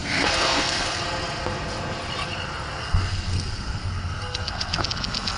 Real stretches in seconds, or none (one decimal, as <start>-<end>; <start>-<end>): 1.0-2.8; 4.8-5.4